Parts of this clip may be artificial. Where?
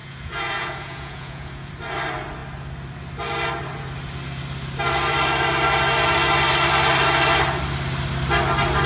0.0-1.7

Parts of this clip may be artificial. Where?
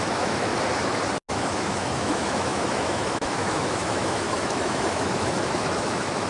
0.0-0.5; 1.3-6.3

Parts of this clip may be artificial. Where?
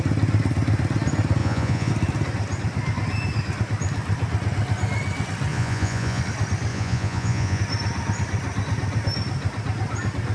1.4-1.9; 5.5-6.2; 6.7-7.6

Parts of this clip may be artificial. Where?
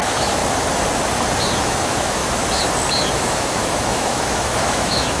0.0-0.4; 1.6-2.2; 3.1-5.2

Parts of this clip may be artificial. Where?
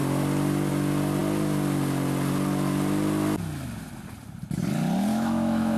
5.1-5.8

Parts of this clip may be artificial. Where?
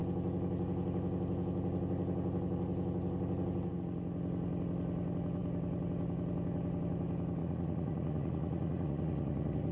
7.4-9.7